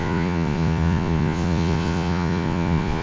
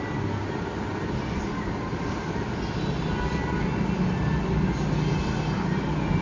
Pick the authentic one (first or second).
second